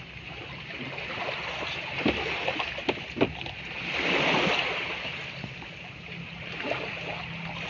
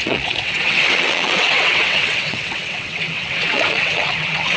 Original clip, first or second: first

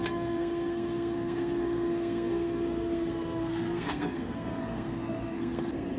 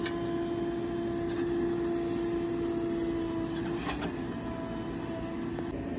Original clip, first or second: second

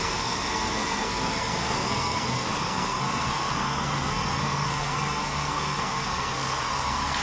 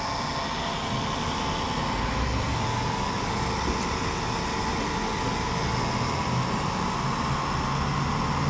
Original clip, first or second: second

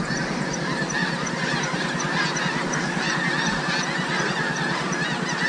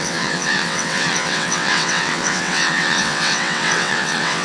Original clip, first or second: first